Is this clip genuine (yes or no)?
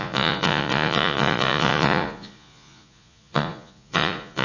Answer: no